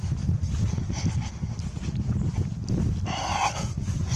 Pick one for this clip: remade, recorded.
recorded